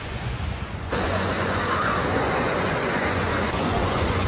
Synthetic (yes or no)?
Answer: yes